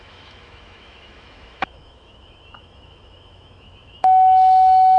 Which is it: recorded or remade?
remade